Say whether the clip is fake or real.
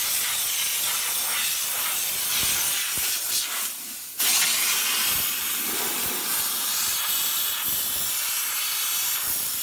real